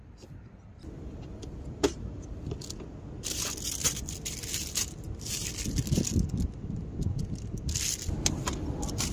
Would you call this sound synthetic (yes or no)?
no